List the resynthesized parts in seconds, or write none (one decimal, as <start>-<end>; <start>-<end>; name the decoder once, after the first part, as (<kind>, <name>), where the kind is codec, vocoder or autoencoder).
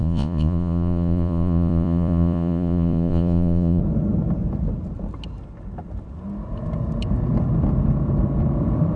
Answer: 0.0-3.8 (vocoder, Vocos)